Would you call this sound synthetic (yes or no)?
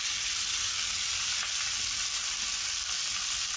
no